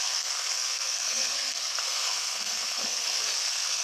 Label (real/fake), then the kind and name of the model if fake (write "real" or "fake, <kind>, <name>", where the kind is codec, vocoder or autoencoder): fake, codec, SNAC